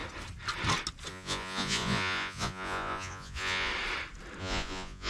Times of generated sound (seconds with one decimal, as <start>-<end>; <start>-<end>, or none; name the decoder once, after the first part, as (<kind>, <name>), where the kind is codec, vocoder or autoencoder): 1.1-3.7 (vocoder, Vocos); 4.4-5.1